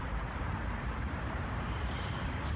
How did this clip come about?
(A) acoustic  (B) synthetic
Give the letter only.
B